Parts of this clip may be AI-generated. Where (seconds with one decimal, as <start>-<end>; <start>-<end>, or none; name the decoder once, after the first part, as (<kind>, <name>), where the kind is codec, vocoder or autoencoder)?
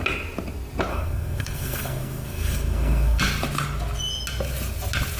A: 0.9-3.2 (codec, SNAC)